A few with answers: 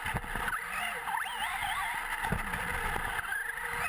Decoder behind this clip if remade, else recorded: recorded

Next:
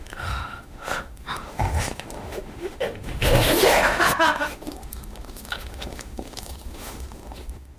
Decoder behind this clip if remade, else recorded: remade, autoencoder, DAC-VAE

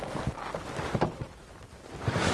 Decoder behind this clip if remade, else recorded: recorded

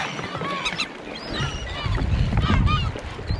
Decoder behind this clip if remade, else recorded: recorded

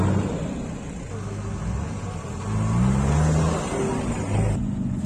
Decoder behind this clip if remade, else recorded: recorded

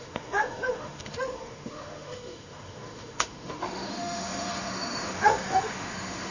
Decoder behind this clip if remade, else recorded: remade, autoencoder, DAC-VAE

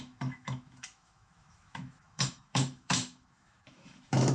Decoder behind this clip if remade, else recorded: remade, autoencoder, DAC-VAE